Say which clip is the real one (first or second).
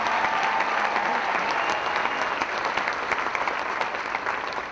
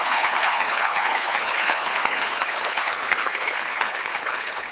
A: first